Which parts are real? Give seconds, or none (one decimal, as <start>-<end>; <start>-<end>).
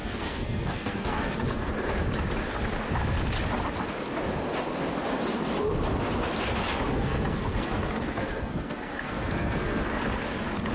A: 1.7-6.9; 9.8-10.7